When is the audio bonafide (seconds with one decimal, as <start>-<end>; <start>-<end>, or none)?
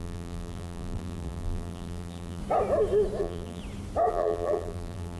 2.4-3.2; 3.6-4.1